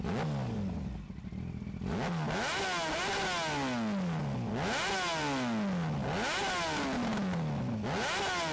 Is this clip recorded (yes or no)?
yes